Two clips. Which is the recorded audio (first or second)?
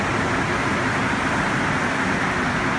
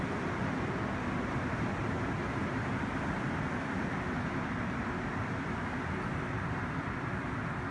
first